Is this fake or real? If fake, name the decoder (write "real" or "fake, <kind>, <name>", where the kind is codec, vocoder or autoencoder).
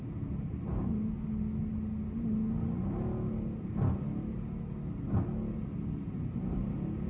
real